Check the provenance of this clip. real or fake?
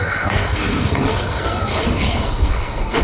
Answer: fake